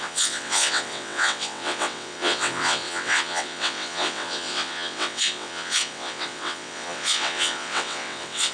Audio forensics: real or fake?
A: fake